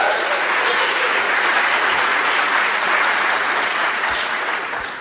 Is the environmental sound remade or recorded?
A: remade